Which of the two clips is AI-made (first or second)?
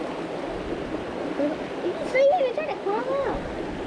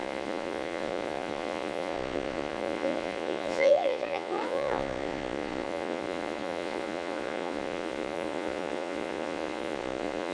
second